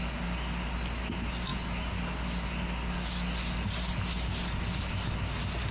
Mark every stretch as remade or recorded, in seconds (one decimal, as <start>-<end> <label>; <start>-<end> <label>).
0.0-5.7 recorded